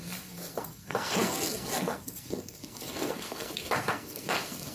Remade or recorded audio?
remade